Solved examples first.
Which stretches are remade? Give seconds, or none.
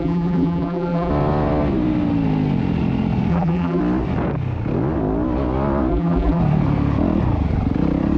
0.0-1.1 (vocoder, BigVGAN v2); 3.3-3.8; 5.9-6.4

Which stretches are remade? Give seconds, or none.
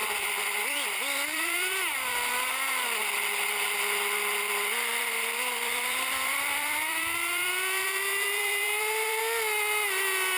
0.0-2.3 (vocoder, BigVGAN v2); 4.9-9.2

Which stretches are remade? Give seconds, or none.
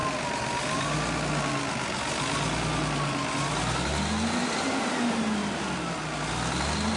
5.4-6.0 (vocoder, BigVGAN v2)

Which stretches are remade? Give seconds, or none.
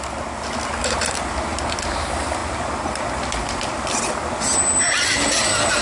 none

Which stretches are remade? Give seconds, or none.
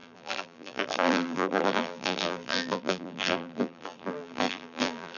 0.0-5.2 (vocoder, BigVGAN v2)